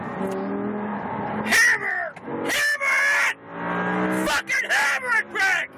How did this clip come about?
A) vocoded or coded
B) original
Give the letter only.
B